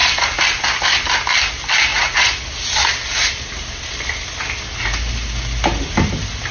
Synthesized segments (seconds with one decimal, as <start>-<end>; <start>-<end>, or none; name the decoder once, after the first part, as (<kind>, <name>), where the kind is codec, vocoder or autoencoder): 1.9-2.4 (vocoder, Vocos)